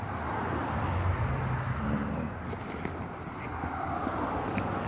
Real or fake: real